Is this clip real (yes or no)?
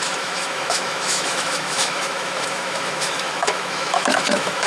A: no